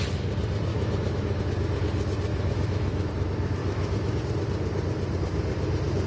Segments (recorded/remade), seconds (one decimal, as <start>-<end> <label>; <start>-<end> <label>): 0.0-0.7 recorded; 0.7-1.4 remade; 1.4-2.3 recorded; 2.3-3.1 remade; 3.1-3.6 recorded; 3.6-4.2 remade; 4.2-6.1 recorded